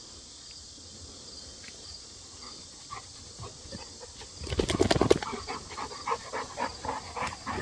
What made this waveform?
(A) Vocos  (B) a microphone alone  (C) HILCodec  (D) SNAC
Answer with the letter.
B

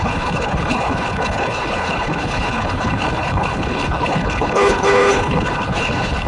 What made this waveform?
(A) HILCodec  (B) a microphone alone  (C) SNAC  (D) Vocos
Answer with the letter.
A